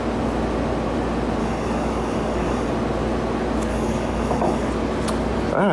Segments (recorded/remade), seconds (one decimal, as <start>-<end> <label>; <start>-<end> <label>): 0.0-1.4 recorded; 1.4-2.7 remade; 2.7-3.7 recorded; 3.7-4.7 remade; 4.7-5.7 recorded